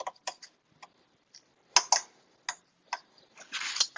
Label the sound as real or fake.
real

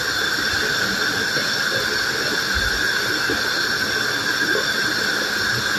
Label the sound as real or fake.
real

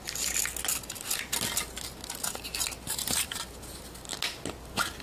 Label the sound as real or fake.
real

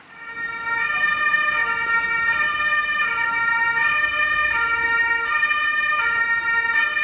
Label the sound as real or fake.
real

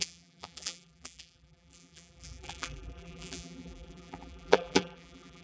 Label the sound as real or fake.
fake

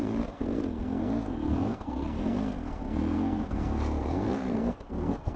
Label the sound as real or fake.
fake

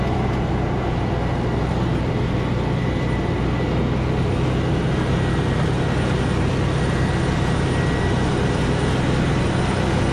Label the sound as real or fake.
real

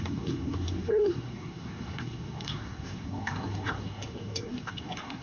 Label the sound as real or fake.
fake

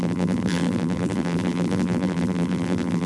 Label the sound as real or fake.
fake